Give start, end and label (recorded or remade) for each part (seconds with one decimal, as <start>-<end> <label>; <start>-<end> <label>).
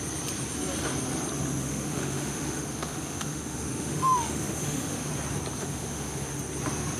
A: 0.0-1.6 recorded; 1.6-5.1 remade; 5.1-5.6 recorded; 5.6-6.4 remade; 6.4-7.0 recorded